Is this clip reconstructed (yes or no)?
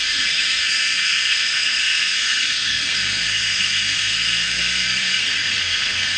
yes